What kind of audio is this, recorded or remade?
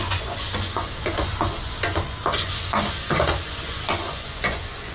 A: remade